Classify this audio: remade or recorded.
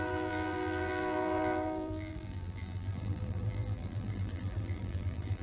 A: remade